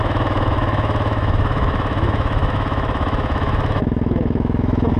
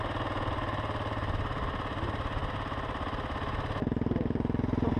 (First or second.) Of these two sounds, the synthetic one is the first